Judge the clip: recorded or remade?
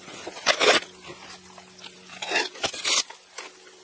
recorded